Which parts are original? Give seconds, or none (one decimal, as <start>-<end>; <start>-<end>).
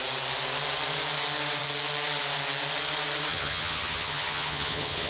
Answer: 0.0-3.3